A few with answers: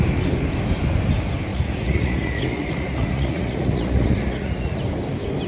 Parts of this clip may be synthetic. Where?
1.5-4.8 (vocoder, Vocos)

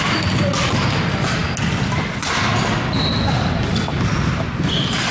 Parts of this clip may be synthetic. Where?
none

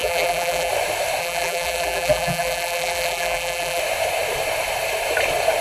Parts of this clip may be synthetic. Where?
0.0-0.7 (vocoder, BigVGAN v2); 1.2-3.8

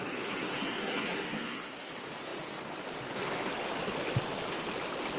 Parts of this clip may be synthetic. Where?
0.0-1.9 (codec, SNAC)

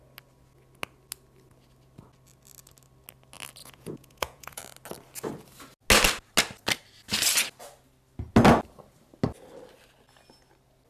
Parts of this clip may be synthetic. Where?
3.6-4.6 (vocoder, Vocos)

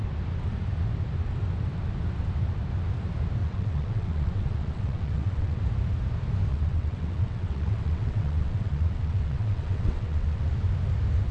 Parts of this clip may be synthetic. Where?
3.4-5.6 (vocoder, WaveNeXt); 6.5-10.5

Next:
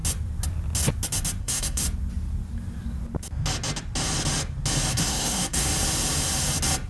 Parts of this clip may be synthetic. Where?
1.4-1.8 (codec, SNAC); 4.9-5.7

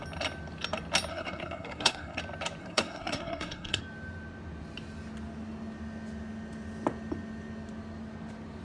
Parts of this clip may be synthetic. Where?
1.1-2.2 (codec, SNAC); 2.6-3.8